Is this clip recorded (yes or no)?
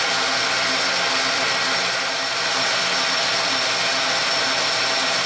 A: yes